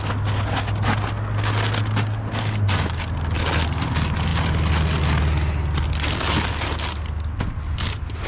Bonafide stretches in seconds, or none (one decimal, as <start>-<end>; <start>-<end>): 0.0-8.3